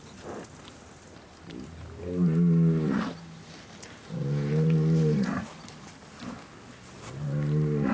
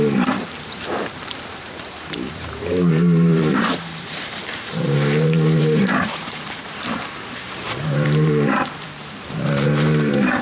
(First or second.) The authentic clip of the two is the first